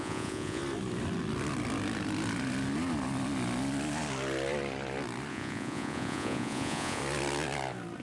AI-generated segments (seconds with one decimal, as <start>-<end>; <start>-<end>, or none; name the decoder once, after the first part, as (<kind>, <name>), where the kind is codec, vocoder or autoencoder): 0.0-0.6 (vocoder, Vocos); 5.3-7.0